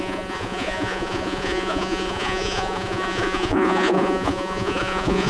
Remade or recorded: remade